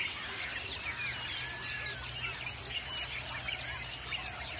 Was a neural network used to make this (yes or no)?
no